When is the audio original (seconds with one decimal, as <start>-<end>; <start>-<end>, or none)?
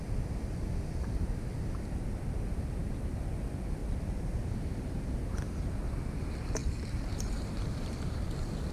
0.0-3.8; 5.3-6.6